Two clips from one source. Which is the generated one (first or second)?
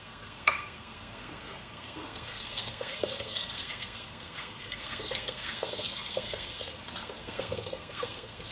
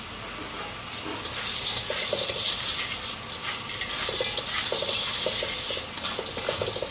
first